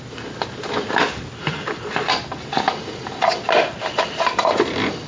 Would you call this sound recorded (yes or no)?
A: yes